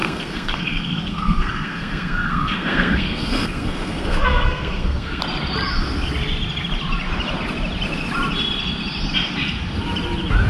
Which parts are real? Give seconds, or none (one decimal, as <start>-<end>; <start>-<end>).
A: 5.2-10.5